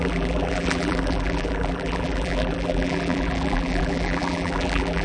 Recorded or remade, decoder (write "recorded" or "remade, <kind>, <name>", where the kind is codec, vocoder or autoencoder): remade, vocoder, BigVGAN v2